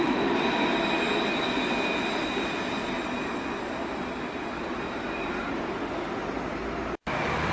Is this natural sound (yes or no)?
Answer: yes